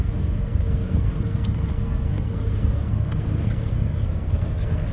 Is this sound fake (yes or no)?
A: yes